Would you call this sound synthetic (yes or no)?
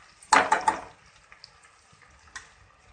no